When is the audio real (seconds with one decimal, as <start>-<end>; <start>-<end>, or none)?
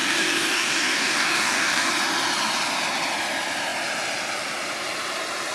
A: 1.9-5.5